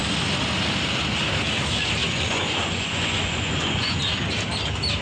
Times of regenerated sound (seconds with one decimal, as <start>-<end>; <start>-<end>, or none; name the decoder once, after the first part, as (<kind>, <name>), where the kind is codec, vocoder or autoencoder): 2.0-4.0 (vocoder, Vocos)